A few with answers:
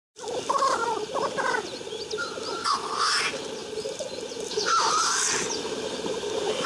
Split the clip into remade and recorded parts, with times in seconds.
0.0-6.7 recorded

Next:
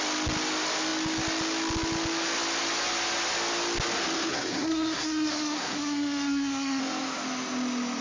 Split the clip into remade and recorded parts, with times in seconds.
0.0-4.3 recorded; 4.3-6.8 remade; 6.8-8.0 recorded